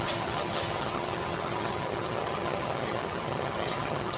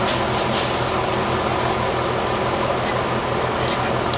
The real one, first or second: second